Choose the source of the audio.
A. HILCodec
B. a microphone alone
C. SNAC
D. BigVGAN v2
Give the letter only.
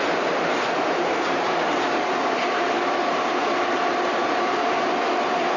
D